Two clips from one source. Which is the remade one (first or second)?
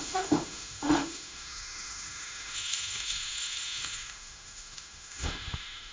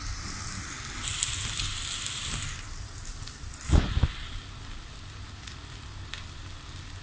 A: first